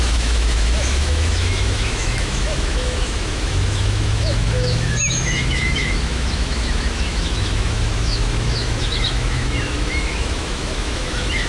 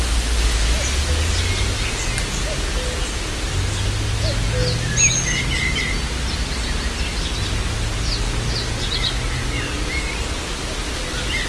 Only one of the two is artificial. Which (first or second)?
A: first